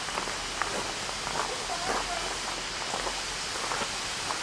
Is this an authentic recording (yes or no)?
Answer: yes